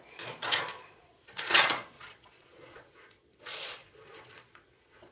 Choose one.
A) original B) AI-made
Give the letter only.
B